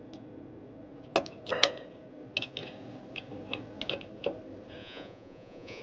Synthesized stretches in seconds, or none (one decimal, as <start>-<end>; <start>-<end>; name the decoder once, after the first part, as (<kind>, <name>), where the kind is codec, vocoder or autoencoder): 4.8-5.8 (vocoder, Vocos)